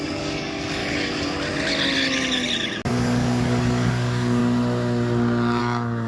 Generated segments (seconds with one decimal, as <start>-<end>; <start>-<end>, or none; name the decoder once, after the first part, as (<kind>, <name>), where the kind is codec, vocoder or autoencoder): 0.0-0.8 (codec, DAC); 2.9-4.4; 5.6-6.1